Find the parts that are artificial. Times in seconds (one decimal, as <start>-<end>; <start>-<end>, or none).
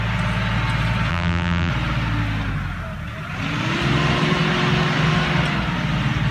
1.1-1.7